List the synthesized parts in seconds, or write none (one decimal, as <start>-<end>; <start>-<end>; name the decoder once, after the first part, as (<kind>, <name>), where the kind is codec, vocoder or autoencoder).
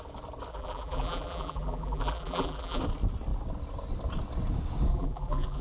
0.5-2.8 (vocoder, BigVGAN v2); 4.9-5.6